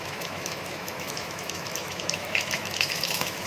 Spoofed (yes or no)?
yes